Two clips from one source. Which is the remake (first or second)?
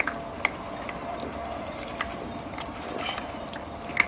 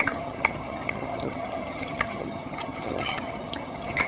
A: second